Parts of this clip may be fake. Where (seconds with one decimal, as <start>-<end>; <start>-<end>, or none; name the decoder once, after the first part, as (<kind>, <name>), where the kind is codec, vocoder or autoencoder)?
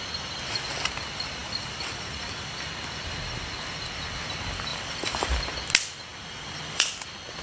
1.4-2.7 (vocoder, BigVGAN v2); 4.7-5.4; 6.1-6.9